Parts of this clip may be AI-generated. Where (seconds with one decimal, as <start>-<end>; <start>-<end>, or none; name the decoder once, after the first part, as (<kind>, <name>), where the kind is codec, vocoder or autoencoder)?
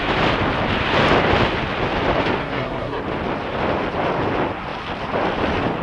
2.4-3.0 (codec, SNAC)